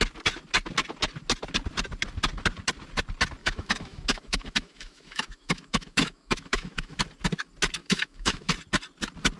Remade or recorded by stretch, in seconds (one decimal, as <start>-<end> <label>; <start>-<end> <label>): 0.0-3.4 recorded; 3.4-7.0 remade; 7.0-7.8 recorded; 7.8-8.5 remade; 8.5-9.4 recorded